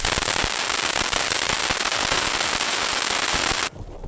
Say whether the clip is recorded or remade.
recorded